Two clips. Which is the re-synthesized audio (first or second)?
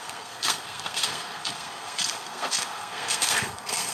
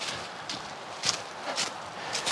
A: first